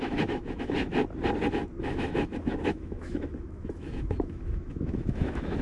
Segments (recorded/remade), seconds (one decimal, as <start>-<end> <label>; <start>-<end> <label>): 0.0-0.9 remade; 0.9-1.8 recorded; 1.8-5.6 remade